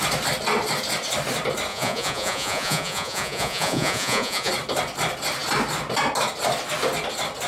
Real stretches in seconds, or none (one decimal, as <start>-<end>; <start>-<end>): 0.0-1.7; 4.5-7.5